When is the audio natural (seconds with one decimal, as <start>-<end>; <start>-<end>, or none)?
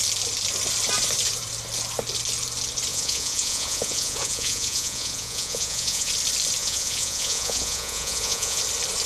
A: 0.0-2.9; 6.1-6.6; 8.6-9.1